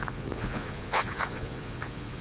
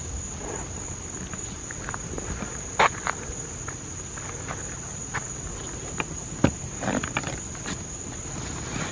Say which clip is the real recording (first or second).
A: second